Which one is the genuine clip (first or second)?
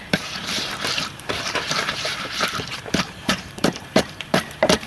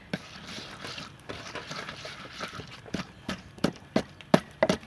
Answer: second